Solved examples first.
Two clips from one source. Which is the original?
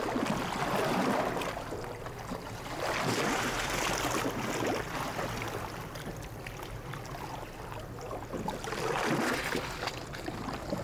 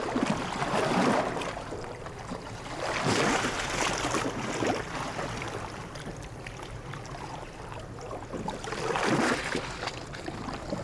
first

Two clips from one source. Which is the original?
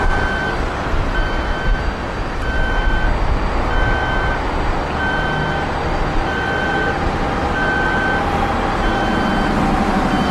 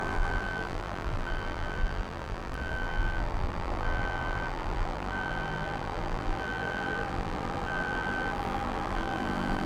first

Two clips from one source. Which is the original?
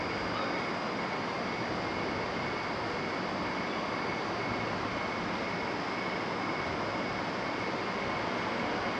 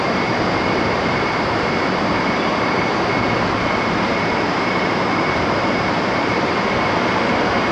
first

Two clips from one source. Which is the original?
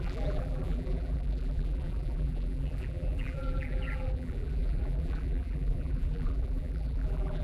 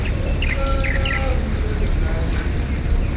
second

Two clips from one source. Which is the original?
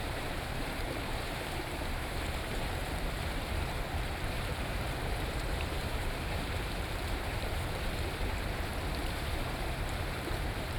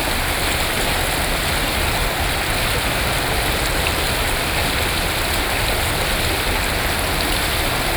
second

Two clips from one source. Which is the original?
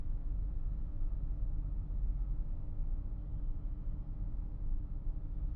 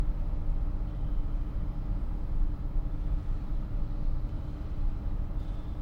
first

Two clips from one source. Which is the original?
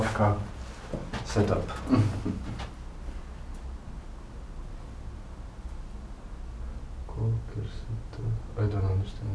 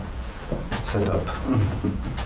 first